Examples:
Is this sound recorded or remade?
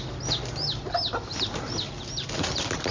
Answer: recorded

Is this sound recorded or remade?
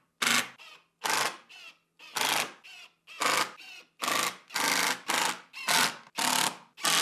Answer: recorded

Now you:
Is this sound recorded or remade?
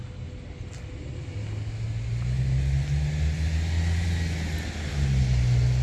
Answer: recorded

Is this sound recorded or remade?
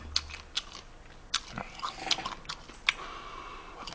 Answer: recorded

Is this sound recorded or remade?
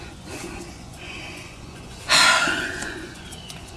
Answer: remade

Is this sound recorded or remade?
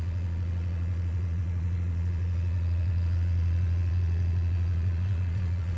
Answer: remade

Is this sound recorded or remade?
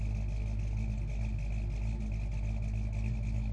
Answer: recorded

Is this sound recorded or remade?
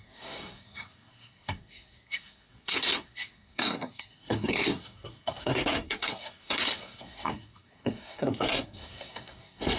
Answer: remade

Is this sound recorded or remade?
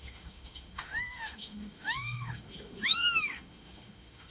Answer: remade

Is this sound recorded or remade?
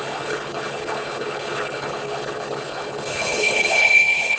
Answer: remade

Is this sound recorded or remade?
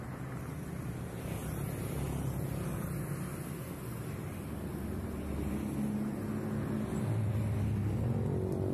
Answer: recorded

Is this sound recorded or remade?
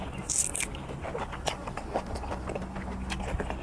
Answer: recorded